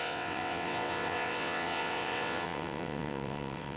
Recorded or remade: remade